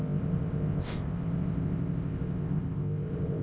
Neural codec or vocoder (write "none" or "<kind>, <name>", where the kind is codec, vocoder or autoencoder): codec, ZipCodec